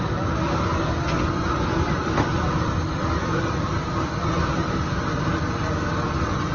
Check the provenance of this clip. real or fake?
real